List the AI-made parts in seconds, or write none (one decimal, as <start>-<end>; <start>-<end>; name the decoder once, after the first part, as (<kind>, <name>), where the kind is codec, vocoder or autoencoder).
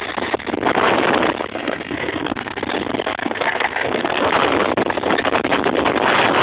1.5-2.6 (codec, SNAC); 3.2-4.3